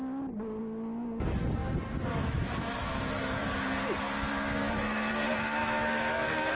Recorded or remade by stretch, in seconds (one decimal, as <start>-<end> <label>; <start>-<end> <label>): 0.0-2.2 recorded; 2.2-3.1 remade; 3.1-4.6 recorded; 4.6-5.1 remade; 5.1-5.6 recorded; 5.6-6.5 remade